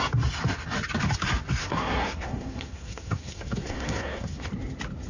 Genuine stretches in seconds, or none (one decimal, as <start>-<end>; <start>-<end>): 0.0-1.6; 4.5-5.1